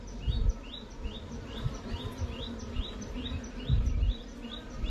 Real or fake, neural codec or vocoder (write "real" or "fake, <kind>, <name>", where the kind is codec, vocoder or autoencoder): real